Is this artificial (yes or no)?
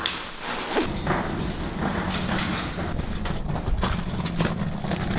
no